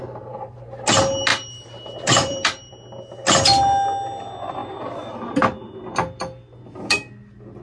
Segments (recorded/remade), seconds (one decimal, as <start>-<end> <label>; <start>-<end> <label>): 0.0-1.3 recorded; 1.3-2.7 remade; 2.7-4.6 recorded; 4.6-5.8 remade; 5.8-7.6 recorded